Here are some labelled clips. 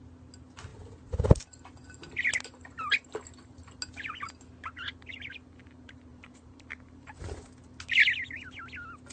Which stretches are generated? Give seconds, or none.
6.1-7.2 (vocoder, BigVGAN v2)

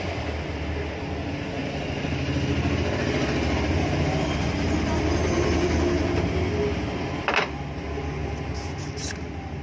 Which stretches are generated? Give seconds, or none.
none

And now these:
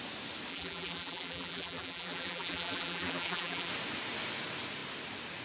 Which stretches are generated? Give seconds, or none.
0.5-3.7 (vocoder, BigVGAN v2)

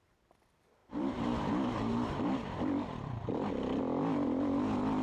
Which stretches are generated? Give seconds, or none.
0.8-3.8 (vocoder, BigVGAN v2)

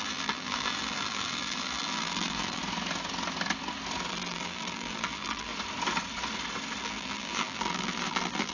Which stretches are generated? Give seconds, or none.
0.0-2.6 (vocoder, BigVGAN v2); 4.1-5.5; 6.8-8.5